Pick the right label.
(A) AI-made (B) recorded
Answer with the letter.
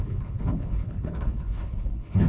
A